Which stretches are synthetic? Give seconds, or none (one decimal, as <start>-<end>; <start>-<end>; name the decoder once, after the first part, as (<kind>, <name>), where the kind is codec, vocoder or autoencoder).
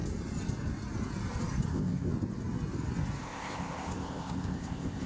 1.7-2.1 (codec, ZipCodec); 3.2-5.1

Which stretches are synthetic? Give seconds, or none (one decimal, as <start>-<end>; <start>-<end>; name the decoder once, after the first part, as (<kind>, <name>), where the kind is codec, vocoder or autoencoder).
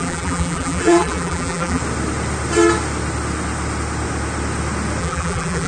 0.0-1.8 (vocoder, BigVGAN v2); 5.0-5.7